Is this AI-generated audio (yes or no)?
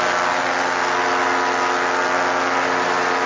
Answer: no